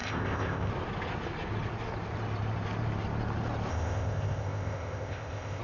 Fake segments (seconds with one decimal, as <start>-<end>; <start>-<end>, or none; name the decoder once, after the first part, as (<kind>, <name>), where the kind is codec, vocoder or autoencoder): 0.0-0.7 (codec, ZipCodec); 3.7-5.6